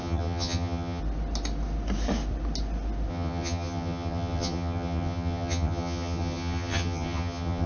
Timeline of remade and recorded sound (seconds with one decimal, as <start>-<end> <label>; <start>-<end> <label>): 0.0-1.0 remade; 1.0-3.1 recorded; 3.1-7.7 remade